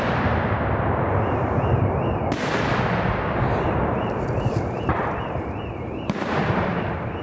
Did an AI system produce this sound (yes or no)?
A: yes